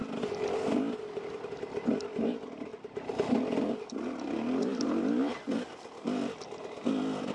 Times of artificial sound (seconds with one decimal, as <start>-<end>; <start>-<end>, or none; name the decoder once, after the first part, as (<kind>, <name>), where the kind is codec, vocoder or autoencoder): none